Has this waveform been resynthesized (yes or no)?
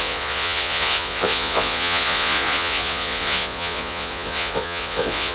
yes